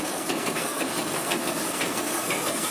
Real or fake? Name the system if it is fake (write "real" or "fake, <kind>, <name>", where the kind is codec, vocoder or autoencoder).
fake, codec, SNAC